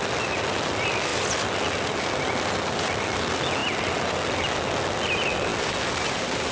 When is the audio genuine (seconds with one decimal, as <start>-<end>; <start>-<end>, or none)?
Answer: 0.0-6.5